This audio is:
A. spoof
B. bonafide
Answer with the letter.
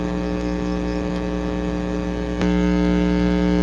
B